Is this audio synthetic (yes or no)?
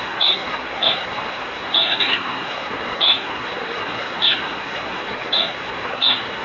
yes